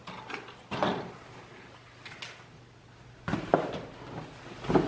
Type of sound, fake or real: real